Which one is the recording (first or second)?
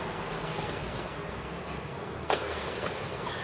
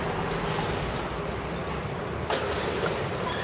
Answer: second